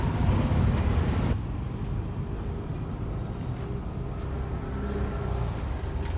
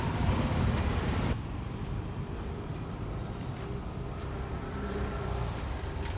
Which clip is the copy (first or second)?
second